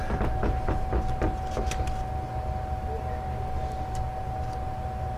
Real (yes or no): yes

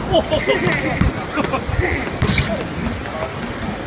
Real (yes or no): yes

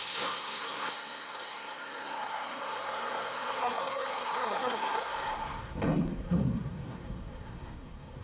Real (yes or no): no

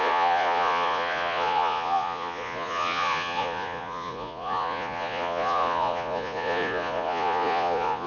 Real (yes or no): no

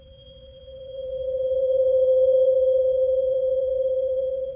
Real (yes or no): no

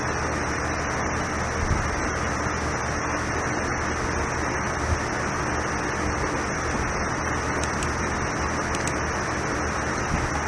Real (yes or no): yes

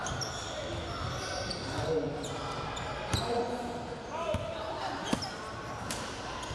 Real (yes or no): yes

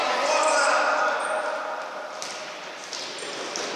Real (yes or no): yes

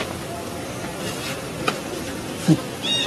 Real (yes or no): yes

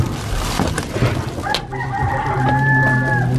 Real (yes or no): yes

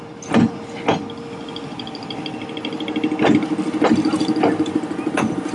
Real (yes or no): yes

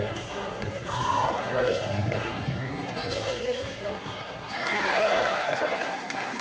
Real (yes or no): no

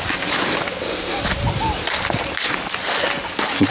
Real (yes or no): yes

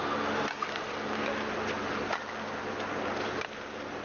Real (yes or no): yes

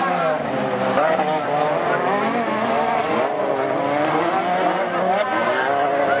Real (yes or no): yes